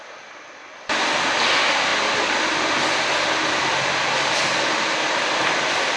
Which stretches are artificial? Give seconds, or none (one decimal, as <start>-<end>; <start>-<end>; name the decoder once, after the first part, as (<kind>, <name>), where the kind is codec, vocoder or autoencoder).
none